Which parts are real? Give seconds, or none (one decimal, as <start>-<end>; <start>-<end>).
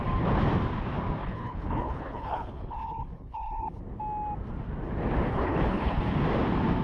0.0-1.2; 3.8-5.3; 6.0-6.8